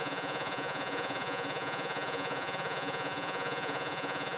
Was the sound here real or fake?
fake